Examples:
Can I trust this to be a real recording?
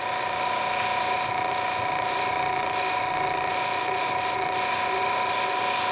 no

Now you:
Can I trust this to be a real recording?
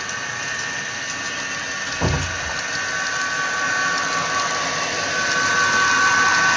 yes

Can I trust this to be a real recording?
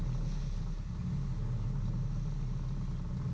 yes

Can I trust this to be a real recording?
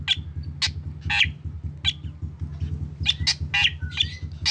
yes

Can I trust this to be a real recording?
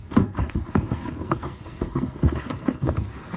no